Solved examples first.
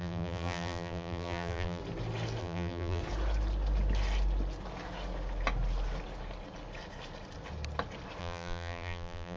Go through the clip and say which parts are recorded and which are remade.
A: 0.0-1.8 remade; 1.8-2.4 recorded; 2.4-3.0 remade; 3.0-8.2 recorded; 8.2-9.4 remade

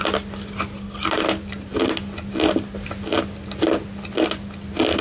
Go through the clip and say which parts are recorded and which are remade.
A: 0.0-5.0 recorded

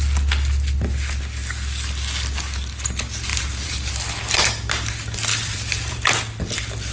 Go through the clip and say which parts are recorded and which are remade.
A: 0.0-3.3 recorded; 3.3-3.9 remade; 3.9-5.3 recorded; 5.3-6.2 remade; 6.2-6.9 recorded

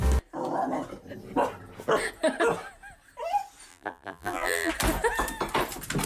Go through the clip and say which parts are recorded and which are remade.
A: 0.0-3.7 recorded; 3.7-4.7 remade; 4.7-6.1 recorded

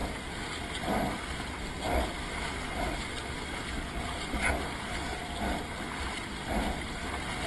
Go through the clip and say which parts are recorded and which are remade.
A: 0.0-7.5 recorded

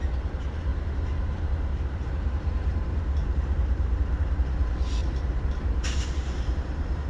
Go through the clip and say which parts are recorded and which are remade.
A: 0.0-0.7 recorded; 0.7-4.3 remade; 4.3-5.0 recorded; 5.0-7.1 remade